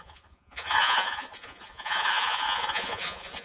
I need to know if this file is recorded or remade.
remade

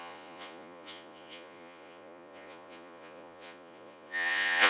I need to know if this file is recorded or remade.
remade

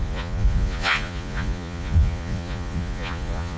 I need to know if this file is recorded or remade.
remade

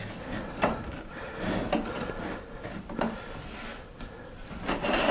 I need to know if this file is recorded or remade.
recorded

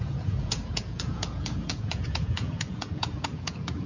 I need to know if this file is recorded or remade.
remade